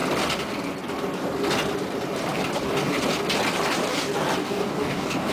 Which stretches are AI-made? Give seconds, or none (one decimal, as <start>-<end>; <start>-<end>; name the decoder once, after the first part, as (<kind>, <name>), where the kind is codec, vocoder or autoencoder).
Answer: 4.4-5.3 (codec, DAC)